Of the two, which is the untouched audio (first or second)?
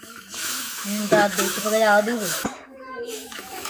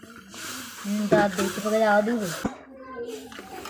second